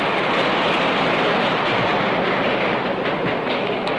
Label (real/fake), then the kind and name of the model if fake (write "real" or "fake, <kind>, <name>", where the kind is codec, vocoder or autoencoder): real